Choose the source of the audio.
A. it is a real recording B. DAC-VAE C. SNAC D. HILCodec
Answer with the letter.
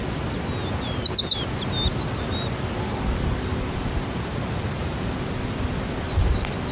A